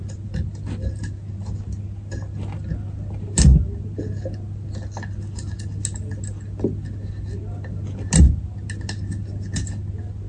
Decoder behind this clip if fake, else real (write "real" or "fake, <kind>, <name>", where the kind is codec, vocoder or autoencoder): real